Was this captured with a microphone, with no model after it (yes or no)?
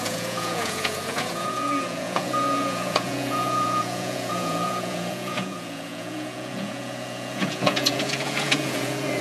no